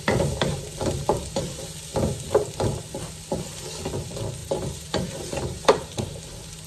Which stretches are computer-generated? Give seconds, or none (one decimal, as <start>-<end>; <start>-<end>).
4.4-6.2